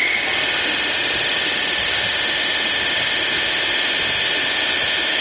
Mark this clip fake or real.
real